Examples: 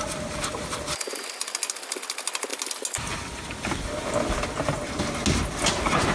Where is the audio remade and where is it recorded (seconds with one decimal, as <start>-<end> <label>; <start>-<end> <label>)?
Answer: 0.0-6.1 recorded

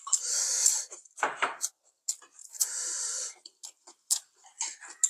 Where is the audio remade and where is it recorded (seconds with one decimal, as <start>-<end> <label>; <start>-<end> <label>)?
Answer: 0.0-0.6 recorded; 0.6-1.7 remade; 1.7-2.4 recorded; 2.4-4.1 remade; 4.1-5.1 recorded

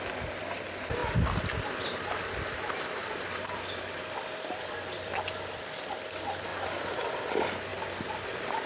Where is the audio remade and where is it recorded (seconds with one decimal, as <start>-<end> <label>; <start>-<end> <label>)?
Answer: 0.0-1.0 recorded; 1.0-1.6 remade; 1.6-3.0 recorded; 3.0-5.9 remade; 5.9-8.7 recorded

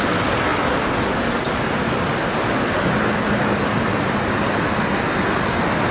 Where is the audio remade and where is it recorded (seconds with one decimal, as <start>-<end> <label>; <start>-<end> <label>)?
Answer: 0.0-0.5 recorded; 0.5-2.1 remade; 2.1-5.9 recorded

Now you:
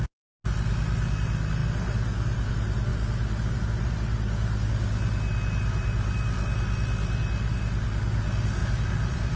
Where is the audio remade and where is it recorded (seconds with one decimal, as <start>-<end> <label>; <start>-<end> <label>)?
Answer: 0.0-8.6 recorded; 8.6-9.4 remade

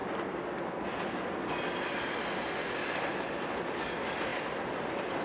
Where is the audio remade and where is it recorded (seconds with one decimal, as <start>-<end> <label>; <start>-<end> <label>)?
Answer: 0.0-4.3 recorded; 4.3-5.2 remade

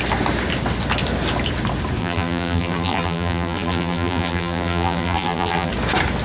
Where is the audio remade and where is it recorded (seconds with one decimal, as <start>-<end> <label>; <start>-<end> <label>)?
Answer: 0.0-2.0 recorded; 2.0-5.7 remade; 5.7-6.2 recorded